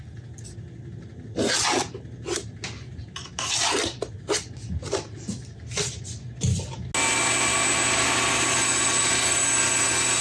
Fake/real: real